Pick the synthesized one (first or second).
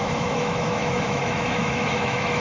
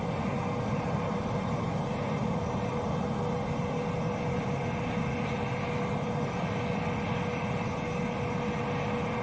first